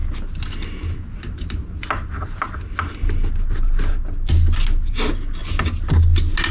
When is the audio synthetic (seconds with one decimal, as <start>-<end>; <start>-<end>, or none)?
none